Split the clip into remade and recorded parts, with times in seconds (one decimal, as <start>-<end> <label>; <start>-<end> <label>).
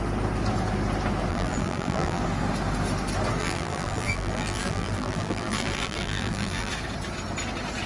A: 0.0-1.3 recorded; 1.3-2.2 remade; 2.2-3.4 recorded; 3.4-6.7 remade; 6.7-7.9 recorded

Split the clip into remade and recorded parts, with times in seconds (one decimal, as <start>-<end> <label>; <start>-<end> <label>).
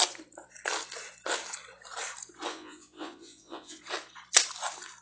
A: 0.0-2.5 recorded; 2.5-3.8 remade; 3.8-5.0 recorded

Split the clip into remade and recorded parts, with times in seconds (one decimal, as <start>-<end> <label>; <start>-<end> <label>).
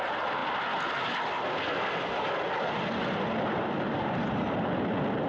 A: 0.0-5.3 recorded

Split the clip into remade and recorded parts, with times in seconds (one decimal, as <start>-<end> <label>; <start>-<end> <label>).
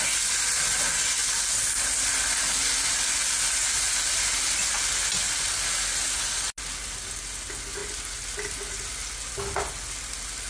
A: 0.0-10.5 recorded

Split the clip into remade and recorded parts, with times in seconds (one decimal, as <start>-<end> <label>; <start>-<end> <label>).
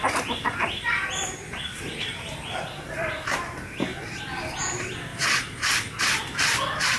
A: 0.0-3.9 remade; 3.9-4.6 recorded; 4.6-5.1 remade; 5.1-6.0 recorded; 6.0-7.0 remade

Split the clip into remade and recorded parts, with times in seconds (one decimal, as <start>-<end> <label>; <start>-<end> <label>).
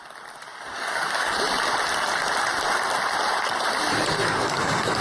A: 0.0-0.5 recorded; 0.5-1.3 remade; 1.3-4.2 recorded; 4.2-5.0 remade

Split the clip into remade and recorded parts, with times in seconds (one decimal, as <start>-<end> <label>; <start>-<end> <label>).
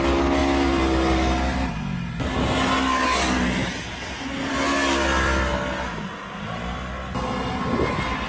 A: 0.0-8.3 recorded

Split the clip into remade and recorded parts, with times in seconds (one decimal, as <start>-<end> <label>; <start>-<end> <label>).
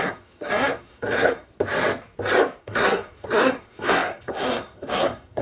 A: 0.0-1.5 remade; 1.5-2.6 recorded; 2.6-5.4 remade